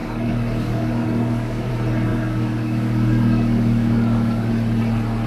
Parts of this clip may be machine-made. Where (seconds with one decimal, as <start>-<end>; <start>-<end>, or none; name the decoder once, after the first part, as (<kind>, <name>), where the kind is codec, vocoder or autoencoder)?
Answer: 0.0-1.7 (codec, DAC); 2.1-4.5